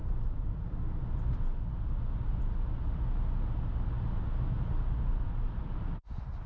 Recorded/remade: recorded